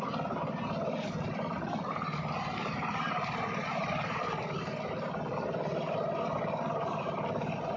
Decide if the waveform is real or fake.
fake